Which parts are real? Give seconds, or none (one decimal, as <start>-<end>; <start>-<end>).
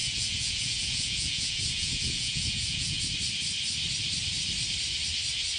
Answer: 3.0-5.6